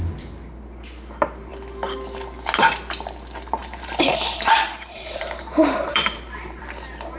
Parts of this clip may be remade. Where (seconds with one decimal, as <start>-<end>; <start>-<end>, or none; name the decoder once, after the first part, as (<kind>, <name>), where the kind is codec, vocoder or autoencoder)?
3.6-6.6 (vocoder, BigVGAN v2)